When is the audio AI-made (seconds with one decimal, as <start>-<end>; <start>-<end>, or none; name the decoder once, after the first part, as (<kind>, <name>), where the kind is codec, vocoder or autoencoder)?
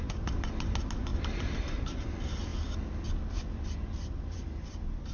1.1-1.6 (vocoder, BigVGAN v2)